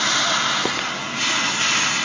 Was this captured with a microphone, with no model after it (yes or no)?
yes